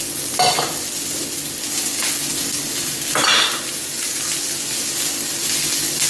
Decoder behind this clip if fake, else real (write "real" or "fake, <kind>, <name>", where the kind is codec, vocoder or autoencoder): real